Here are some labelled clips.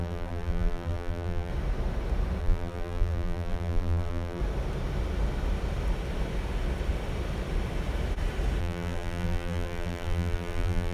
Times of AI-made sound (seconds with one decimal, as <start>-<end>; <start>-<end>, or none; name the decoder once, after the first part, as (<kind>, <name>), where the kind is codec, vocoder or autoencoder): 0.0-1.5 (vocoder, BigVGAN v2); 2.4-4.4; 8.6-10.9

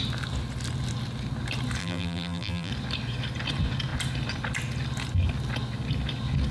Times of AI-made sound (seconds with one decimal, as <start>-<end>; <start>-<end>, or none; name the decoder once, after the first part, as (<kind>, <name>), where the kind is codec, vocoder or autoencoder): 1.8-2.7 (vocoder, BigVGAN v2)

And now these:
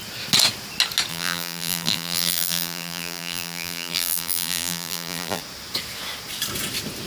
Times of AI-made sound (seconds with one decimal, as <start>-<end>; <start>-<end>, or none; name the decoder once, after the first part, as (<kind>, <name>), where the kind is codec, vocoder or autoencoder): 1.1-5.4 (vocoder, BigVGAN v2)